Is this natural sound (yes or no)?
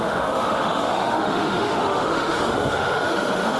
no